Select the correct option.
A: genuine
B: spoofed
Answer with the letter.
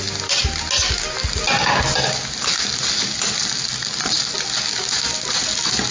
A